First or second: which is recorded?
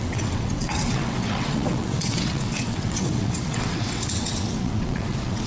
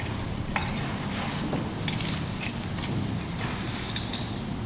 second